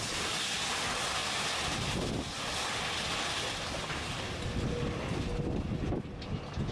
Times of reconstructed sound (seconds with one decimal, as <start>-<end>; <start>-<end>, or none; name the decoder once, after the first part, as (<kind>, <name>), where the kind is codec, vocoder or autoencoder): none